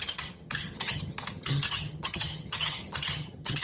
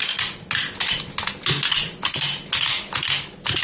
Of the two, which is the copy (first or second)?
first